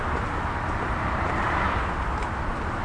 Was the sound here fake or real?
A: fake